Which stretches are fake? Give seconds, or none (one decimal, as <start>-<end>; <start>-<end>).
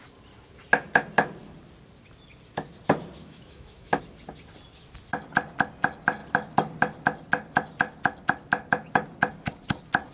3.2-4.0